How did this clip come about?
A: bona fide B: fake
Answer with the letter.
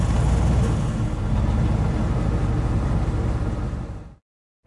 A